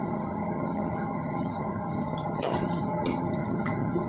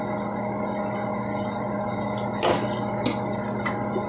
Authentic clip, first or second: second